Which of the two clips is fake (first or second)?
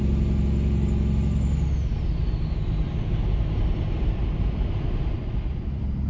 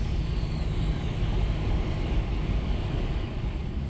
second